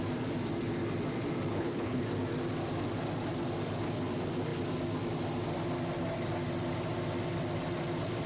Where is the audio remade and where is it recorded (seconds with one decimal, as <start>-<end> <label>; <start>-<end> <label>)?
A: 0.0-1.5 recorded; 1.5-2.0 remade; 2.0-8.3 recorded